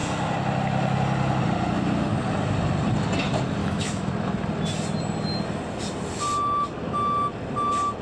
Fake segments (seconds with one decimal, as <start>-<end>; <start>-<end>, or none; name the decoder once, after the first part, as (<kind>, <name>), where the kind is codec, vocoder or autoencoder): 3.6-4.1 (autoencoder, DAC-VAE)